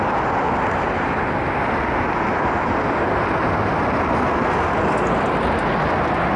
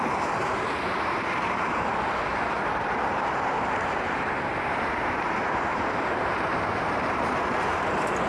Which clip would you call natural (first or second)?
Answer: first